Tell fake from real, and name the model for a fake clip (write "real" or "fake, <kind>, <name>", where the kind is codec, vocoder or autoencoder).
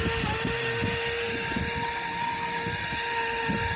real